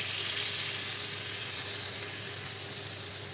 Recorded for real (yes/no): yes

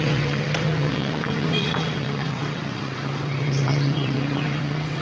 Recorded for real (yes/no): no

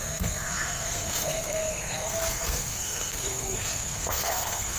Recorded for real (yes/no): no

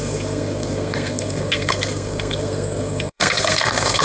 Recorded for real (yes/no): no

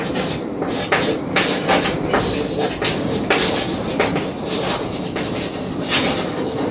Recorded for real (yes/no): yes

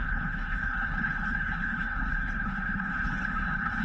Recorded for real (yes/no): no